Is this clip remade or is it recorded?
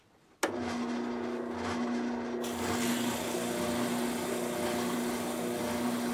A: recorded